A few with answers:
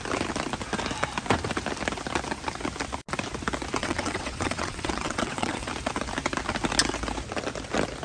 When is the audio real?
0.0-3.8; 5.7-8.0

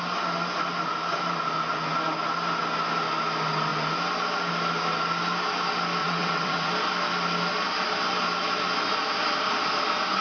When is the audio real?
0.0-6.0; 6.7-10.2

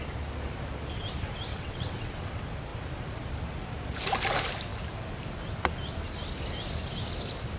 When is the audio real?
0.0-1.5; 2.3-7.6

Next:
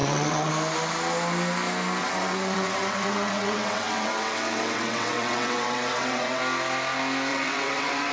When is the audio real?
0.5-2.0; 6.4-7.3

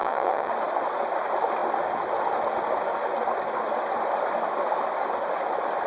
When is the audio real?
0.5-5.9

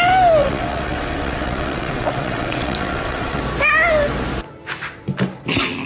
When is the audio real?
0.0-0.4; 3.4-5.9

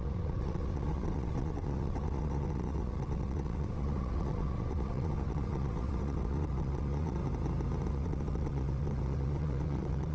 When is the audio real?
7.2-7.9

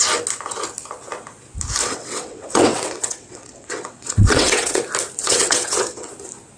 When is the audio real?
0.0-1.8; 4.8-5.2; 6.1-6.6